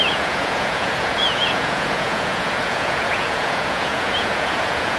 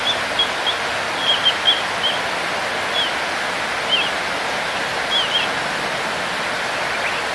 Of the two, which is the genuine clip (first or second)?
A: second